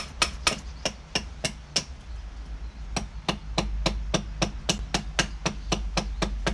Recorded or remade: recorded